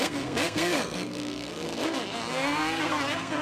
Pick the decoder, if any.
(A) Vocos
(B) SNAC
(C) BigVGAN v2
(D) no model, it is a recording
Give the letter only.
B